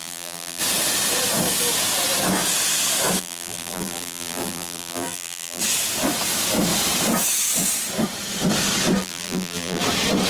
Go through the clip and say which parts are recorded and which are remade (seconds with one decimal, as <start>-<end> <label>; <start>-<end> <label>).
0.0-0.6 remade; 0.6-3.2 recorded; 3.2-5.6 remade; 5.6-9.0 recorded; 9.0-9.8 remade; 9.8-10.3 recorded